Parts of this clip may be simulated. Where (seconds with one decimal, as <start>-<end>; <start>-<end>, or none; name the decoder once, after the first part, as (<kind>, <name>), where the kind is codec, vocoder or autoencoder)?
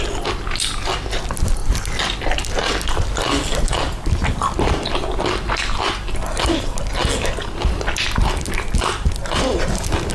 none